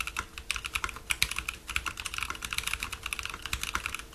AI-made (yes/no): no